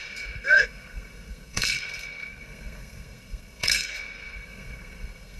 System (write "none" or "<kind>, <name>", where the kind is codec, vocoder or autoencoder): codec, SNAC